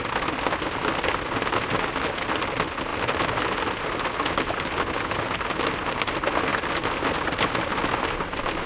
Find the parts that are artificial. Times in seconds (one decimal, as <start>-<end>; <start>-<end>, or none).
none